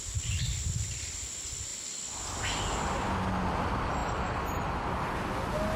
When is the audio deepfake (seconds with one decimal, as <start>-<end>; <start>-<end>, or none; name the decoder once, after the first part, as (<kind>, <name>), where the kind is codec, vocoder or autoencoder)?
none